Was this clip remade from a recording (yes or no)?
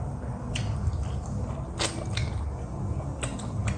no